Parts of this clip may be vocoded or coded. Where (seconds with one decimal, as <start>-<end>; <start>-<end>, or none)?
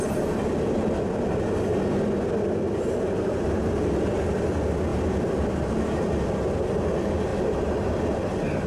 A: 4.9-5.6